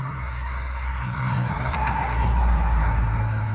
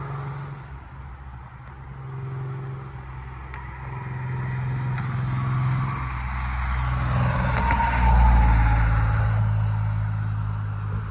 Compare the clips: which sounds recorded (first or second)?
second